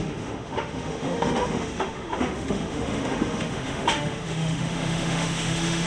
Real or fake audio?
fake